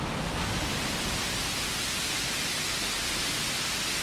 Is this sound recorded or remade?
recorded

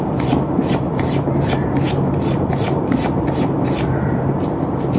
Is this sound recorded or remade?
remade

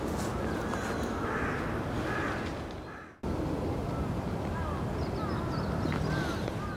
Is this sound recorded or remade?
recorded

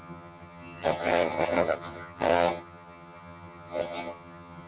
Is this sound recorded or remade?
remade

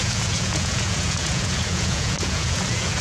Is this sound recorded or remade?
remade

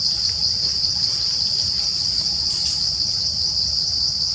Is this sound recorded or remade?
recorded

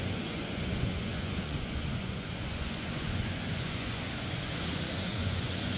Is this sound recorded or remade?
remade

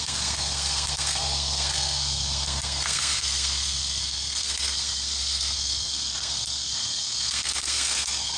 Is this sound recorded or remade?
remade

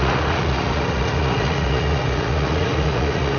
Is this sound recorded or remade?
remade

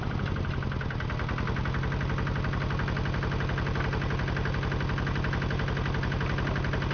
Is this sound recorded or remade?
recorded